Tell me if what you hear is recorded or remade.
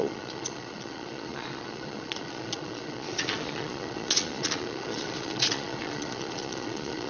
remade